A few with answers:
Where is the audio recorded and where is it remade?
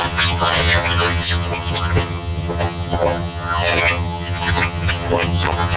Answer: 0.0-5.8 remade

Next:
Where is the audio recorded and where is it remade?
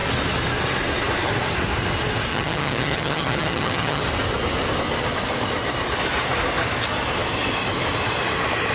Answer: 0.0-2.3 recorded; 2.3-4.0 remade; 4.0-8.7 recorded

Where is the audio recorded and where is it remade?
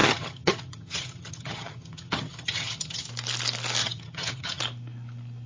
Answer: 0.0-3.1 remade; 3.1-3.8 recorded; 3.8-4.6 remade; 4.6-5.5 recorded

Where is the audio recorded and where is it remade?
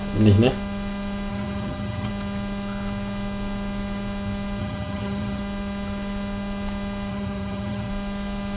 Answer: 0.0-1.3 recorded; 1.3-2.1 remade; 2.1-4.6 recorded; 4.6-5.4 remade; 5.4-7.1 recorded; 7.1-7.9 remade; 7.9-8.6 recorded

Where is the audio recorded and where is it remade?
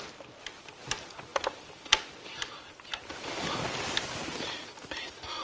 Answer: 0.0-5.4 recorded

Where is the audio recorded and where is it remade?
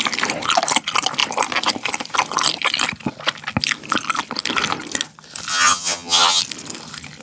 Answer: 0.0-5.5 recorded; 5.5-6.4 remade; 6.4-7.2 recorded